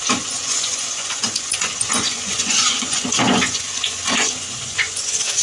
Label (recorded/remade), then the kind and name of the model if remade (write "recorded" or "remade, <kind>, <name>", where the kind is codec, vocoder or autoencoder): remade, vocoder, Vocos